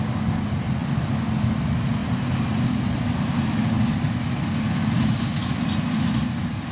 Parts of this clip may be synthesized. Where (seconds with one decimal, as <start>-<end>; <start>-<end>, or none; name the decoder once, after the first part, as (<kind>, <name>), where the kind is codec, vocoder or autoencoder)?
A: none